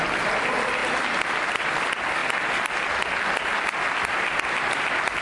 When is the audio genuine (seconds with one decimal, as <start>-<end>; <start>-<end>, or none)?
0.0-5.2

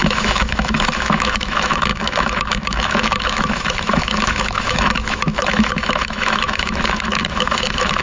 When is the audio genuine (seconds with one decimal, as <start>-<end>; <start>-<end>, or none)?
none

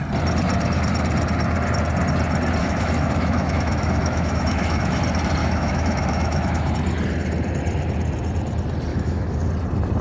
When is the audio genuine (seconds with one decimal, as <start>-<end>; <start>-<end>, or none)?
0.0-2.6; 5.0-5.4; 6.7-8.9; 9.5-10.0